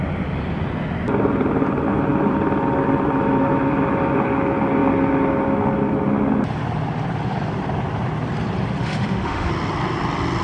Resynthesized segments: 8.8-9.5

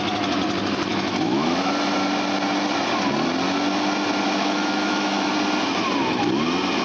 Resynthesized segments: 0.9-1.7; 4.4-5.3

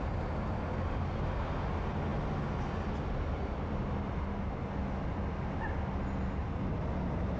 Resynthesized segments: none

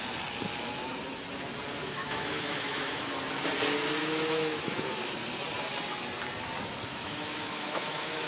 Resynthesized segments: 1.8-3.1; 4.0-5.1; 6.9-8.3

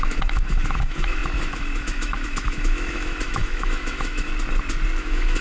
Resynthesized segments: 0.0-4.3; 5.0-5.4

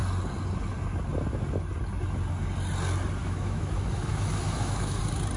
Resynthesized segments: 3.2-5.0

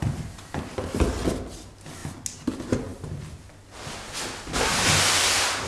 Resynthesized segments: none